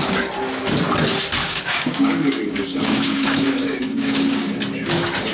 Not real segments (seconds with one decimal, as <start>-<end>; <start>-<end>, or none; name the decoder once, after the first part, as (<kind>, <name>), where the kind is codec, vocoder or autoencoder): 1.4-4.6 (codec, DAC)